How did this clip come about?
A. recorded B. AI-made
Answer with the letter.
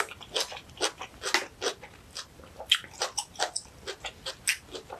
A